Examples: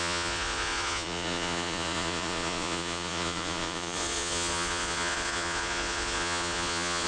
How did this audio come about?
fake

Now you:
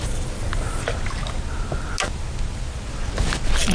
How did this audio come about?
real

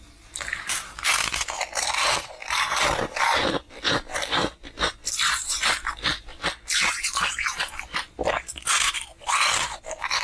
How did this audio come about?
real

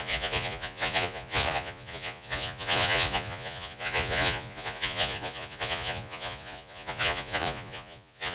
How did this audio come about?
fake